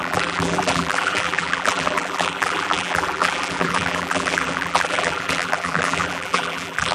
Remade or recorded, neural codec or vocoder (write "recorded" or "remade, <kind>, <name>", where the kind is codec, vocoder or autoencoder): remade, vocoder, BigVGAN v2